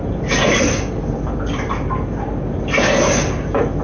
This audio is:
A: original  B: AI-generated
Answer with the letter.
A